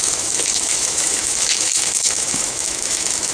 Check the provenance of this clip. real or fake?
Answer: fake